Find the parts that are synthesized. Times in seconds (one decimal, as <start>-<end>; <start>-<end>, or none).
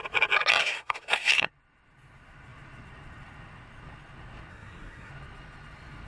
0.6-1.5; 4.5-5.1